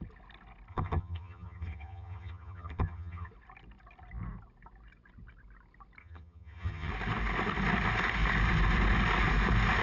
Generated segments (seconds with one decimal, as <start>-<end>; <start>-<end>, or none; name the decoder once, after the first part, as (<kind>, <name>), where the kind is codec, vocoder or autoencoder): 0.7-3.3 (vocoder, HiFi-GAN); 6.0-6.9